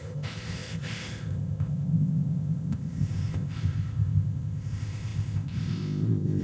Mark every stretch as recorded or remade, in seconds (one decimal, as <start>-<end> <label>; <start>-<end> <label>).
0.0-6.4 remade